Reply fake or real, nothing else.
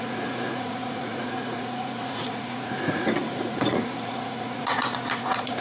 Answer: fake